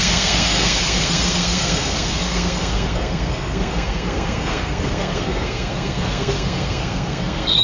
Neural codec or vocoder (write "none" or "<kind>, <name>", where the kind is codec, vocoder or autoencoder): codec, SNAC